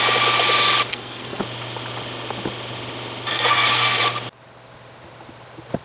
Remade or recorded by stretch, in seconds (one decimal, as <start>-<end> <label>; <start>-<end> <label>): 0.0-0.9 recorded; 0.9-1.4 remade; 1.4-3.3 recorded; 3.3-4.0 remade; 4.0-5.8 recorded